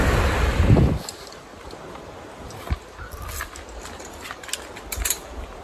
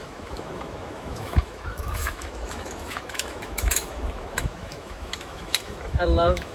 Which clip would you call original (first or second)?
first